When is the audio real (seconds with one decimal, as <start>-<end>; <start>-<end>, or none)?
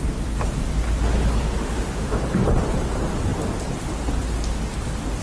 0.0-1.6; 2.2-5.2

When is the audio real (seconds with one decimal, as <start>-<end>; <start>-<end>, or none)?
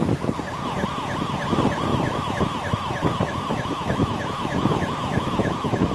0.0-1.9; 2.4-3.0